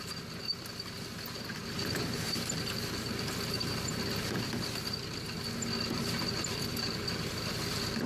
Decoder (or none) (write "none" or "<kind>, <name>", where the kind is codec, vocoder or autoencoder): none